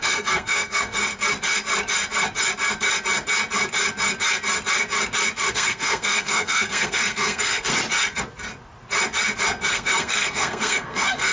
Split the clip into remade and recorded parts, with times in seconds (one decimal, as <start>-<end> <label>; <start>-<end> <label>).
0.0-1.0 remade; 1.0-5.5 recorded; 5.5-7.7 remade; 7.7-9.7 recorded; 9.7-11.3 remade